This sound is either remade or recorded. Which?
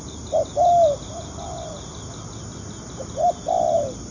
recorded